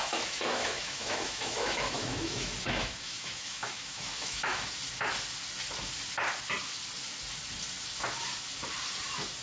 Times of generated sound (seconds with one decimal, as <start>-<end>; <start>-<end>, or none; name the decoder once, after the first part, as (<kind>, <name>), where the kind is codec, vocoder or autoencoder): 0.0-4.7 (autoencoder, DAC-VAE)